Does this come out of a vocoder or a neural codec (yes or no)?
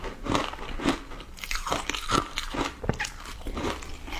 no